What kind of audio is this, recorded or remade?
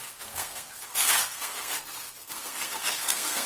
remade